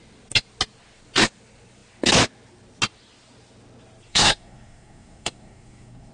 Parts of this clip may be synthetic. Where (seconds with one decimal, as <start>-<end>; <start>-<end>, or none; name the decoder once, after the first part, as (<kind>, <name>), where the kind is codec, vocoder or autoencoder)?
4.1-6.1 (codec, SNAC)